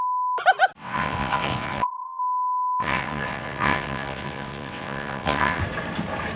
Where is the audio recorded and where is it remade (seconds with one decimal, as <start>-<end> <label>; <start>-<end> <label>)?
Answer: 0.0-0.8 recorded; 0.8-2.2 remade; 2.2-2.8 recorded; 2.8-5.6 remade; 5.6-6.4 recorded